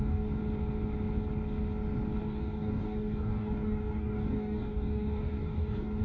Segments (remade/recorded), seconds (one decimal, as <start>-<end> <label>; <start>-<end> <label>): 0.0-0.4 remade; 0.4-2.2 recorded; 2.2-6.0 remade